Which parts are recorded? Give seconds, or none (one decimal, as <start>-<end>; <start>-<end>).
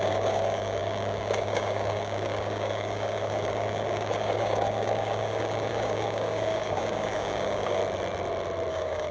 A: 7.8-8.7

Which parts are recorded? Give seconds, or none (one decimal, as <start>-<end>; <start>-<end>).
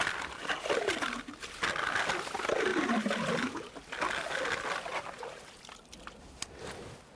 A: 0.0-7.2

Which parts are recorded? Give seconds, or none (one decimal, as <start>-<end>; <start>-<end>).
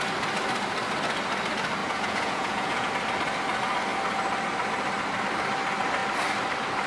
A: 0.0-1.8; 2.9-6.9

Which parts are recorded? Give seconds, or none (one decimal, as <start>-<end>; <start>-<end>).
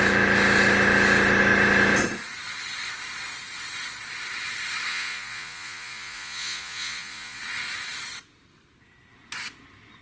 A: 0.0-4.9; 7.4-10.0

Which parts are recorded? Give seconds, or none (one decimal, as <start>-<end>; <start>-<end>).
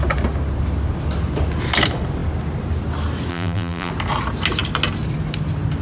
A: 0.0-3.3; 3.9-5.8